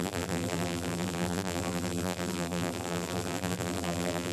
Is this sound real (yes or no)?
no